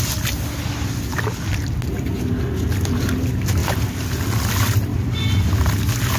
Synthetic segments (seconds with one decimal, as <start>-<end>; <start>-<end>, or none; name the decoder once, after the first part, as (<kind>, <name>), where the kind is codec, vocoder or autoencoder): none